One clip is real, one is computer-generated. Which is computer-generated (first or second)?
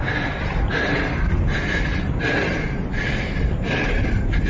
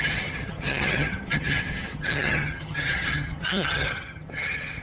second